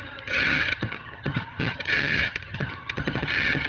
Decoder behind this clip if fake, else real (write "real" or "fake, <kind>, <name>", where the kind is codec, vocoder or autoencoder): fake, vocoder, HiFi-GAN